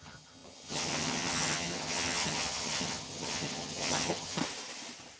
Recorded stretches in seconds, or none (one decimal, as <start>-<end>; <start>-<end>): 4.4-5.2